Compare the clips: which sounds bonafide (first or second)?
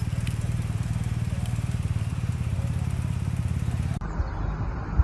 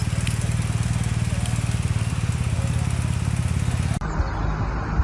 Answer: second